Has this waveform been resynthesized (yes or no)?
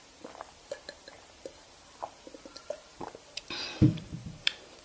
yes